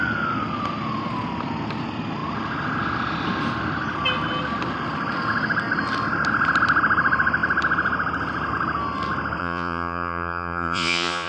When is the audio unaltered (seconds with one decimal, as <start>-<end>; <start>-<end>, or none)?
0.0-9.4